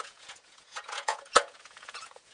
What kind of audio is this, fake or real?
fake